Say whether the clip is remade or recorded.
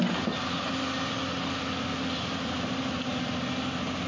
recorded